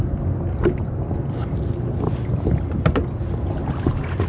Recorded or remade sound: recorded